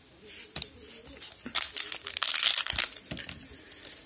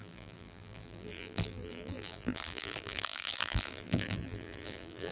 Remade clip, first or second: second